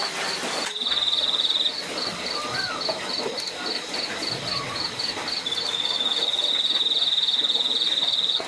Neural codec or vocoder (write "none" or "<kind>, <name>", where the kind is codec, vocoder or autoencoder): none